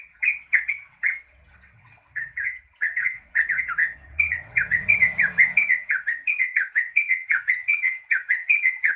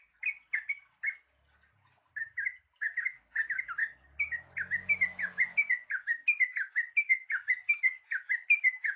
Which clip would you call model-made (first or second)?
first